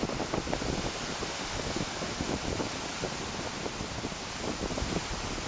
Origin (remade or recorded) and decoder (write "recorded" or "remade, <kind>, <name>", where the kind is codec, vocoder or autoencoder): recorded